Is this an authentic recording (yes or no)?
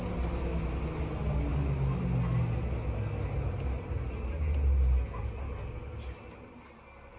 yes